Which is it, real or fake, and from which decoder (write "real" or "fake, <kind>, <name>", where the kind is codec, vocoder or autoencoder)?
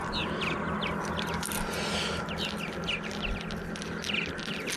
real